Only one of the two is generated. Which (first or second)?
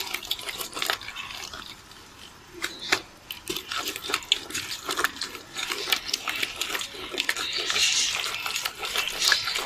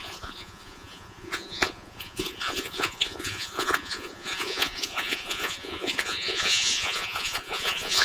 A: second